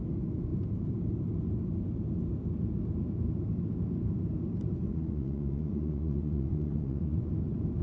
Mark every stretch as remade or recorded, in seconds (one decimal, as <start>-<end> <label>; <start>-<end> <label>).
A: 0.0-4.9 recorded; 4.9-7.3 remade; 7.3-7.8 recorded